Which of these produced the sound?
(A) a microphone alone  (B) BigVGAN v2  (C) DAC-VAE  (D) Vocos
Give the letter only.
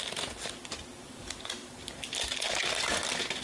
B